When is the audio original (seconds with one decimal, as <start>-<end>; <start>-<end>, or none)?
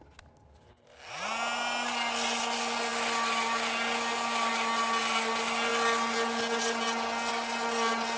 0.0-8.2